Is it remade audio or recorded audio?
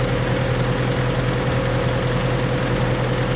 recorded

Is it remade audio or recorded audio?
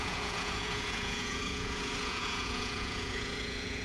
remade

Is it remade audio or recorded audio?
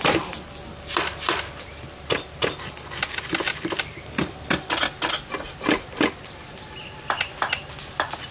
recorded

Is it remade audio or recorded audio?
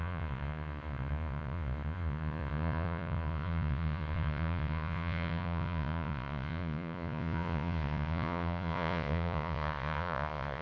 remade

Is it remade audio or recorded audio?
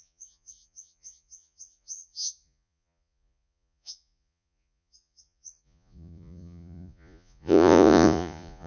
remade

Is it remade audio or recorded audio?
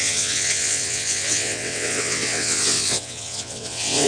remade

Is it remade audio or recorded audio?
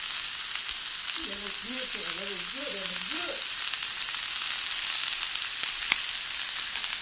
recorded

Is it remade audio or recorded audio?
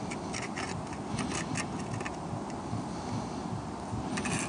recorded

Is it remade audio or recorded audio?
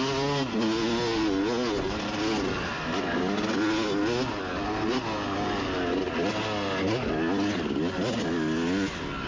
recorded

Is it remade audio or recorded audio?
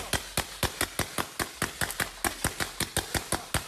recorded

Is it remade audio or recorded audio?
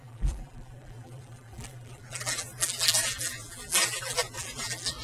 remade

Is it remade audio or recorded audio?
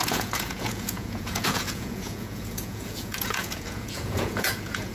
remade